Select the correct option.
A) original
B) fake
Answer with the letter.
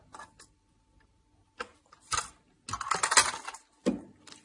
A